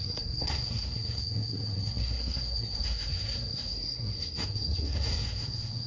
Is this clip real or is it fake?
fake